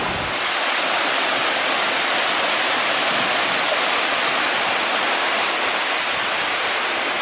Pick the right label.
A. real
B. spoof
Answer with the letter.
A